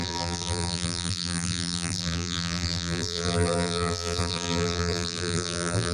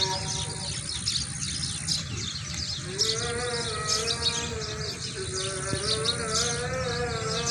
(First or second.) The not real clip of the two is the first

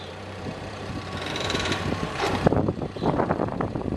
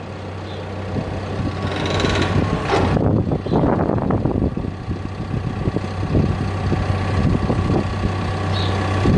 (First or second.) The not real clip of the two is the first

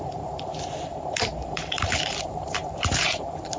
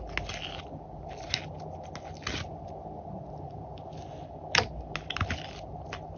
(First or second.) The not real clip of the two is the first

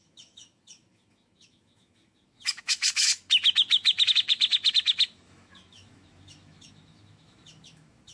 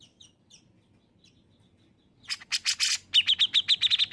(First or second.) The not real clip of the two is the first